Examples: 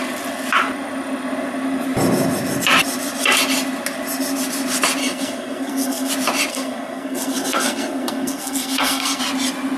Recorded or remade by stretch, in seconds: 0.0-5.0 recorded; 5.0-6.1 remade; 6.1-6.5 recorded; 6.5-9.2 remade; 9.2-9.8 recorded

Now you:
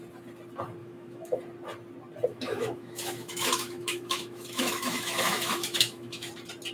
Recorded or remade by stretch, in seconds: 0.0-0.8 recorded; 0.8-1.4 remade; 1.4-2.3 recorded; 2.3-6.3 remade; 6.3-6.7 recorded